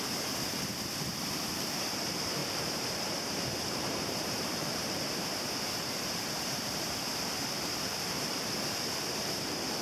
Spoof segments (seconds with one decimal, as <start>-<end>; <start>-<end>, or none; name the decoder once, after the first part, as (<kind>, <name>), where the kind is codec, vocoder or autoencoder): 0.0-9.8 (vocoder, BigVGAN v2)